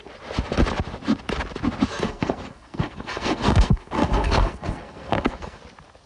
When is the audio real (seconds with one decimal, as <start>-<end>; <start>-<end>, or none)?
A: 0.0-1.9; 5.6-6.1